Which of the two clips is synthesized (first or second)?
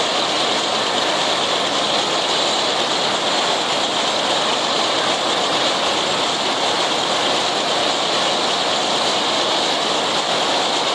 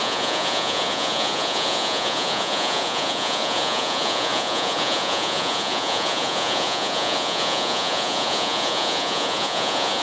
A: second